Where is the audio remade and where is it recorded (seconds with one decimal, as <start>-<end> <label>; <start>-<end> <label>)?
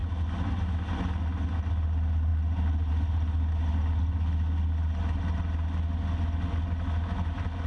0.0-7.7 recorded